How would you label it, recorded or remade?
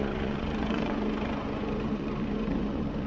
remade